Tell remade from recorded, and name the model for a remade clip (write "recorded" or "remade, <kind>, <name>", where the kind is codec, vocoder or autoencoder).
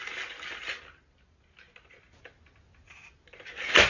recorded